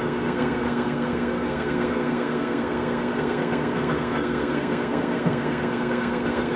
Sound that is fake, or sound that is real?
fake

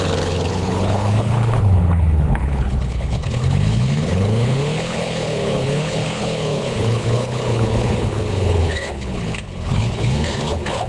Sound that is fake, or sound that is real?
fake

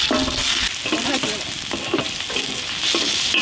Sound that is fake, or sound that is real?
real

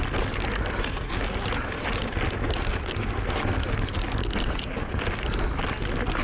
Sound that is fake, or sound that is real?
real